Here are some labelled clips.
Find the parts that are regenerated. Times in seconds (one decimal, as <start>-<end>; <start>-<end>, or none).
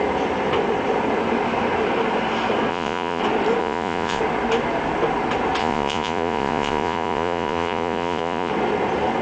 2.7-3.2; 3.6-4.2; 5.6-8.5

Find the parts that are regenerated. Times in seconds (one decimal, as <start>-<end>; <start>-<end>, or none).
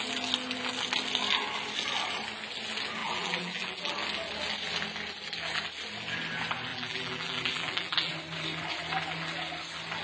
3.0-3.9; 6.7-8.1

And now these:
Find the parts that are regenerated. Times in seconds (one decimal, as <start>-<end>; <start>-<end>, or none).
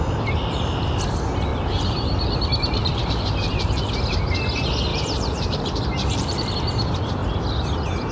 1.5-3.9; 4.9-6.5